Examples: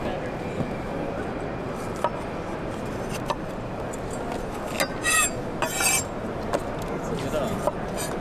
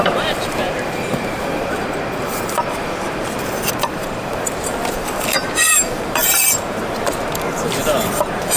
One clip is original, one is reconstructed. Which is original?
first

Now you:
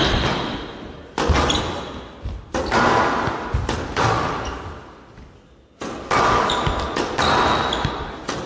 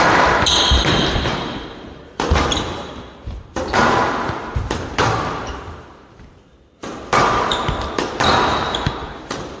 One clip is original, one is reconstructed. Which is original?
first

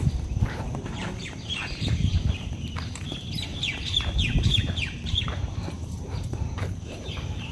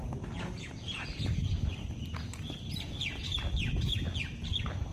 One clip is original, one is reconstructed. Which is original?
second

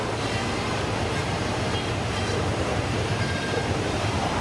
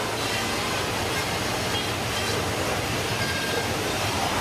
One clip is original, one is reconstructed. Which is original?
second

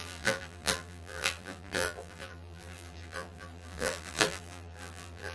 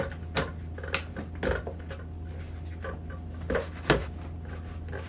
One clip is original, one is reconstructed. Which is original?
second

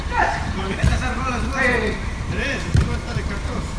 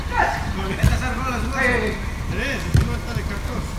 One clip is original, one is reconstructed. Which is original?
second